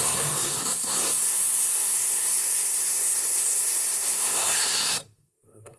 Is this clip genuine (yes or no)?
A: no